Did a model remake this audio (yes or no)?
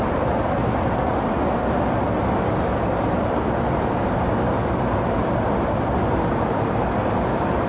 no